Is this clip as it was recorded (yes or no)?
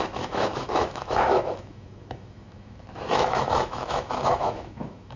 no